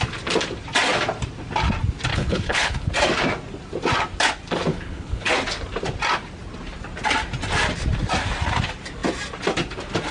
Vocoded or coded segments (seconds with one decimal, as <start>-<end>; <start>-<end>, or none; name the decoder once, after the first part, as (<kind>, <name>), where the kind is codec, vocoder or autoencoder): 2.1-2.9 (codec, HILCodec); 4.7-5.3